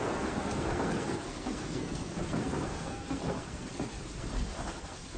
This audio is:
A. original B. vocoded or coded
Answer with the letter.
B